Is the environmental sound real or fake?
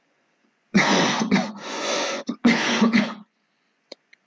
fake